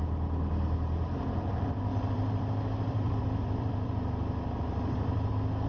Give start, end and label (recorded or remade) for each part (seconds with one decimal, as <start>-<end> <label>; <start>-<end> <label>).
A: 0.0-1.9 recorded; 1.9-5.3 remade; 5.3-5.7 recorded